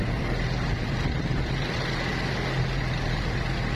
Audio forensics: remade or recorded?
recorded